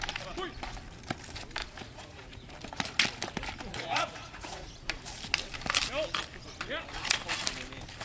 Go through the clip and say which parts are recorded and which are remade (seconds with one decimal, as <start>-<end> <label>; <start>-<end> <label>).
0.0-1.6 recorded; 1.6-2.5 remade; 2.5-3.7 recorded; 3.7-5.0 remade; 5.0-8.0 recorded